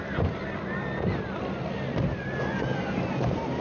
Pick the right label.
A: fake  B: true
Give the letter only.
B